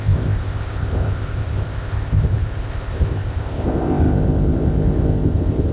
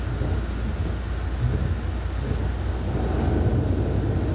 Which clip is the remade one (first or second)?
first